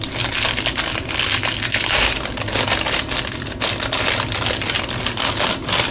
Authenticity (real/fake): real